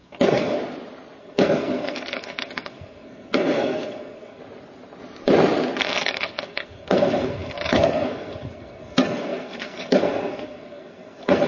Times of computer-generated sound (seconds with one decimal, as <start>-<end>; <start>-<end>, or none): 0.0-0.6; 1.2-4.4; 5.8-11.5